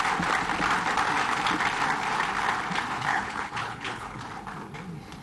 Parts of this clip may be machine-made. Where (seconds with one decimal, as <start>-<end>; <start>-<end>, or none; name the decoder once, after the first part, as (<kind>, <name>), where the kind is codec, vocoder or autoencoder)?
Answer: 3.1-4.2 (codec, HILCodec)